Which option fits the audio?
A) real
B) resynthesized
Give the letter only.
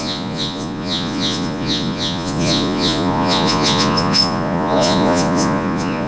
B